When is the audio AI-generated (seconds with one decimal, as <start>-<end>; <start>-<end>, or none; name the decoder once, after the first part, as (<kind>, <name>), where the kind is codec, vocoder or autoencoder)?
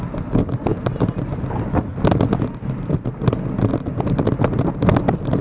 none